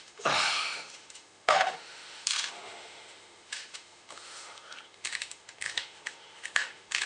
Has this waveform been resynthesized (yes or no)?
yes